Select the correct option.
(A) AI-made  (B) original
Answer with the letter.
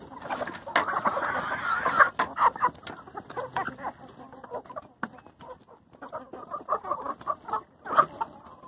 B